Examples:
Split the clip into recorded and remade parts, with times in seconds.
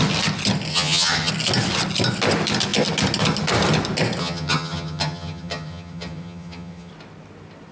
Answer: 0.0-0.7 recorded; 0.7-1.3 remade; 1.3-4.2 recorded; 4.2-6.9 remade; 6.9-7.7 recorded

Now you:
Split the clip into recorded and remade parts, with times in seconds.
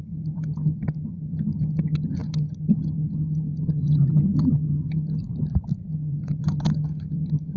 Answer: 0.0-5.2 remade; 5.2-5.9 recorded; 5.9-7.6 remade